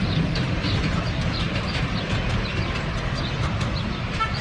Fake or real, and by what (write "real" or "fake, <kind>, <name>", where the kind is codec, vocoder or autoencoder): fake, vocoder, BigVGAN v2